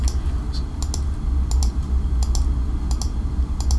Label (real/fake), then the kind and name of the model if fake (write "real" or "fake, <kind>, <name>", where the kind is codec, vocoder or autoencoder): real